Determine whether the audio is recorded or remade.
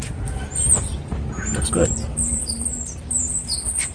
remade